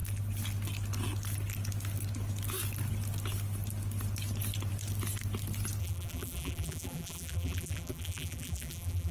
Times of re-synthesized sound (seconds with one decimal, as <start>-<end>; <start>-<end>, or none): 5.8-9.1